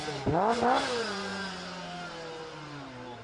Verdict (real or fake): real